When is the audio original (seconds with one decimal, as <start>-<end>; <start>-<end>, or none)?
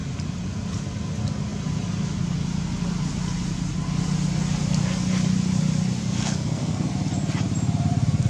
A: 0.0-6.0; 6.9-8.3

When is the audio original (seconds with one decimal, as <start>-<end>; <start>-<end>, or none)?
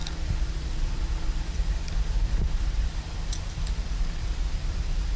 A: none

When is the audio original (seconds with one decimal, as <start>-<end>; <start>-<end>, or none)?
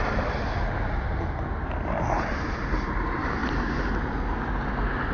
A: 0.0-5.1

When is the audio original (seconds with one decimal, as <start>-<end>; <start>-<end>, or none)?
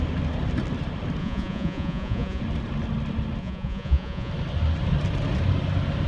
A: 0.0-1.2; 2.4-3.4; 4.3-6.1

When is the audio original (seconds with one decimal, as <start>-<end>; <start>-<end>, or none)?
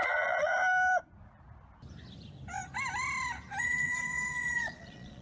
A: 0.5-3.6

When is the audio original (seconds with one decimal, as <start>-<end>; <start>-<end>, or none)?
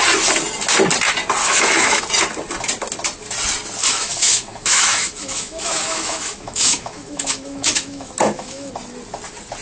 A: 0.0-1.4; 2.0-3.8; 8.7-9.6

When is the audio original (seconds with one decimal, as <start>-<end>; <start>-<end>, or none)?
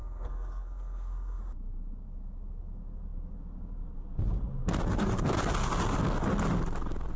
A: 1.4-7.2